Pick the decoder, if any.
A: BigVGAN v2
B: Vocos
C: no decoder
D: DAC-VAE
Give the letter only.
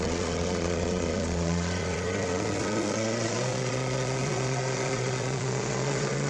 B